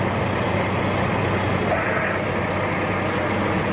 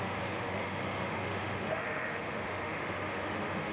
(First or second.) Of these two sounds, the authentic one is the first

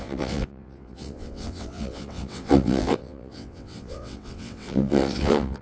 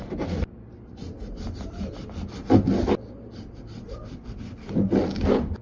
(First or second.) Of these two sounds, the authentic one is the second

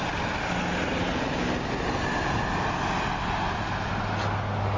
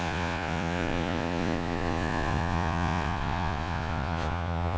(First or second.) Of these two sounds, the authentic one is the first